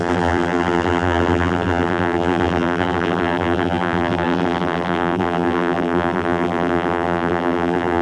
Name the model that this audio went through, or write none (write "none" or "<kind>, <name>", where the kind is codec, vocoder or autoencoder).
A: vocoder, BigVGAN v2